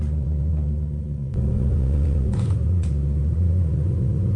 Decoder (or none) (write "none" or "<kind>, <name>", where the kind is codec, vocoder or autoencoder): vocoder, Vocos